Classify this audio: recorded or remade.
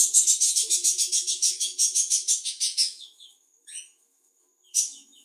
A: remade